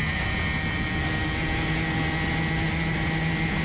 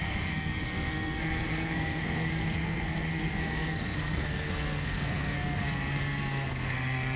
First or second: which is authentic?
first